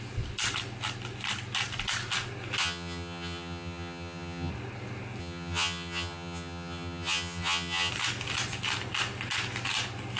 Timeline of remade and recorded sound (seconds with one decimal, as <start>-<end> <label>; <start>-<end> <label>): 0.0-2.6 recorded; 2.6-4.5 remade; 4.5-5.2 recorded; 5.2-7.9 remade; 7.9-10.2 recorded